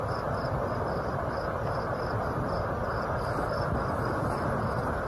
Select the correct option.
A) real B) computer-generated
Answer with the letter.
A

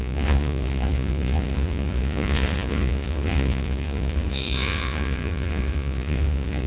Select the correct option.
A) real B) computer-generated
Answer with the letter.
B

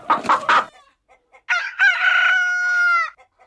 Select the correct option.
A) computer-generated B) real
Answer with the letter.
B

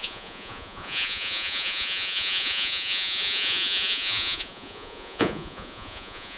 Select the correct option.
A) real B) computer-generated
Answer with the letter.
B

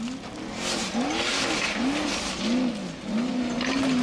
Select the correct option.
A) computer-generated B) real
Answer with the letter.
B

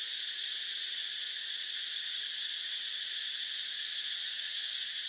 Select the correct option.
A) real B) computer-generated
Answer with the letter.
B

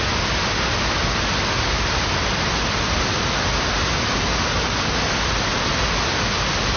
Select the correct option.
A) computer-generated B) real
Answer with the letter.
B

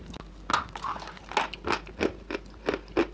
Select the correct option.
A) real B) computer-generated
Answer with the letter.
A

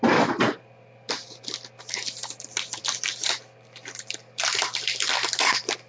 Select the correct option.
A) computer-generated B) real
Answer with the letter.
B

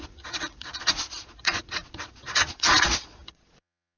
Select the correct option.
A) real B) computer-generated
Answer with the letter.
B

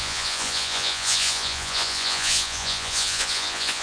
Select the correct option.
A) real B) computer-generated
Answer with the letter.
B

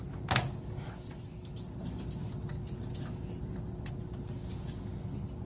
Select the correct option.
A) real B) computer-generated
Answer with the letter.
A